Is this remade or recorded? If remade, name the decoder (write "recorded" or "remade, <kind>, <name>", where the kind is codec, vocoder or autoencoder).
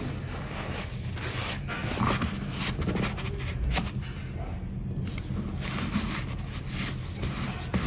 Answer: recorded